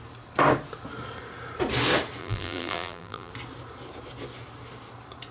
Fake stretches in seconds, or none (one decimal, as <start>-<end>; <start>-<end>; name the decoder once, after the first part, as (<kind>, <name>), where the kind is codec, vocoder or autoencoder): 2.2-3.3 (vocoder, BigVGAN v2)